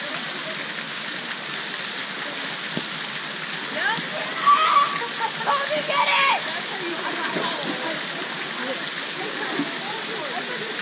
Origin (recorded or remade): recorded